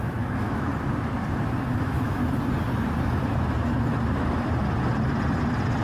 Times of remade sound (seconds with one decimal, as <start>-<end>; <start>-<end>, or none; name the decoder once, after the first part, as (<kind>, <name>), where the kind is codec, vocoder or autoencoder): 0.0-0.7 (autoencoder, DAC-VAE); 1.8-2.2